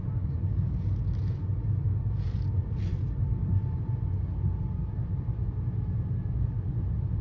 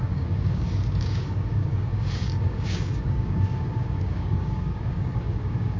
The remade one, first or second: second